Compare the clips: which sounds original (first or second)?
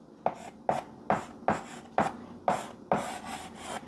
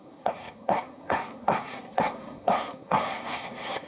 first